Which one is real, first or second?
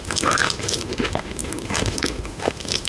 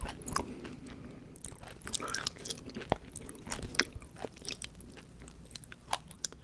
second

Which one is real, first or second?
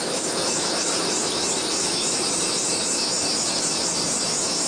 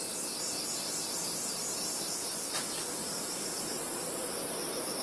second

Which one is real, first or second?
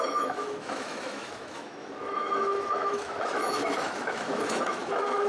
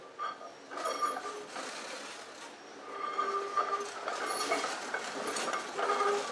second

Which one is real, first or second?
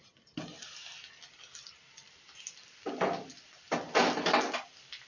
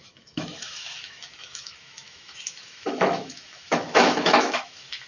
first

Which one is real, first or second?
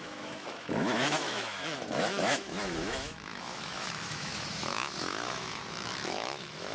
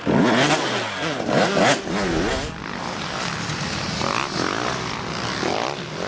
second